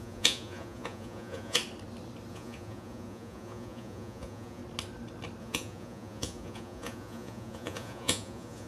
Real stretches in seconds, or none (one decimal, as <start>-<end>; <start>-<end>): 1.6-2.3; 4.6-5.4